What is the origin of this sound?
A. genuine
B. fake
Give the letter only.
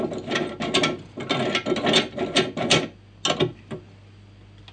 A